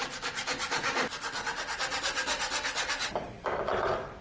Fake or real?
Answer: real